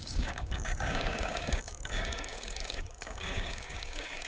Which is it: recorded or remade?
remade